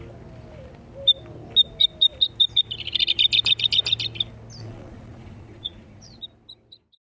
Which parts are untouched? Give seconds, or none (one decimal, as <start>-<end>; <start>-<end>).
0.0-4.6; 6.2-7.1